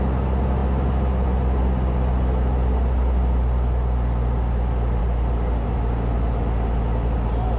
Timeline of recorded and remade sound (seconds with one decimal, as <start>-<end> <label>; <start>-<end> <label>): 0.0-7.6 recorded